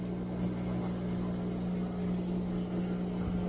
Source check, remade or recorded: recorded